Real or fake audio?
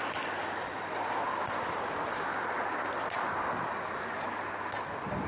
real